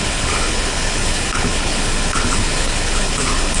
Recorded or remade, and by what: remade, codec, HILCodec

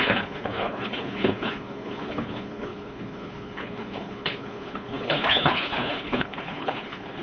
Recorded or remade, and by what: remade, codec, HILCodec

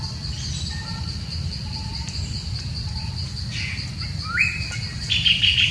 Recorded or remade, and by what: recorded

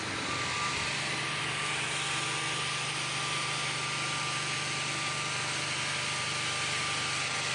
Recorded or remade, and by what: recorded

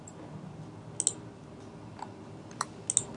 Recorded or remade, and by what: recorded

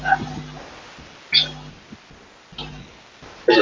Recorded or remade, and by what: recorded